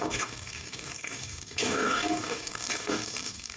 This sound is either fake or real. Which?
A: fake